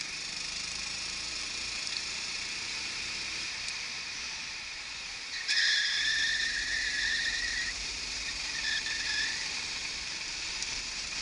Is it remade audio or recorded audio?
remade